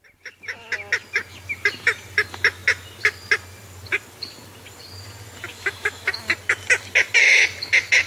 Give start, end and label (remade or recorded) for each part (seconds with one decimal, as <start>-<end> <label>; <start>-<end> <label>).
0.0-5.5 recorded; 5.5-6.1 remade; 6.1-8.1 recorded

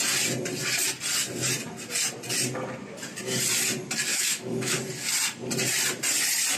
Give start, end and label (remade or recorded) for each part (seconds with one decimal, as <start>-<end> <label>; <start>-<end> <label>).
0.0-4.1 recorded; 4.1-4.8 remade; 4.8-6.6 recorded

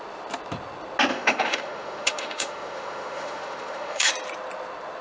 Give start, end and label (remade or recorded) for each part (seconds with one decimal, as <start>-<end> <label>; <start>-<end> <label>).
0.0-1.1 recorded; 1.1-4.1 remade; 4.1-5.0 recorded

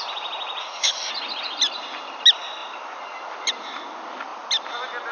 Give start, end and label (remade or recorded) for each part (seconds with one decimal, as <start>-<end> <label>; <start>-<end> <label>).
0.0-0.6 recorded; 0.6-1.1 remade; 1.1-5.1 recorded

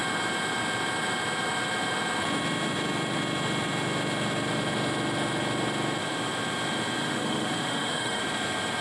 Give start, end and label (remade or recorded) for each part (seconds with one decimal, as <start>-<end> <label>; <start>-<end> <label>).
0.0-7.0 recorded; 7.0-8.2 remade; 8.2-8.8 recorded

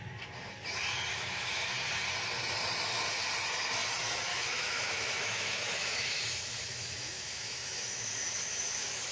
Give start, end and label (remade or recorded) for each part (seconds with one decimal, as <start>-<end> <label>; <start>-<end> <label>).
0.0-1.1 recorded; 1.1-1.7 remade; 1.7-4.3 recorded; 4.3-9.1 remade